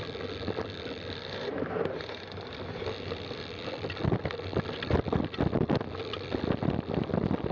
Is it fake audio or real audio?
real